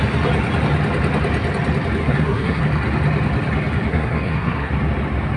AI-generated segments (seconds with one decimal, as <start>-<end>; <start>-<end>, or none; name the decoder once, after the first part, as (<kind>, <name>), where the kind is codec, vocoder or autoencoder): 2.0-2.6 (codec, SNAC); 3.9-4.7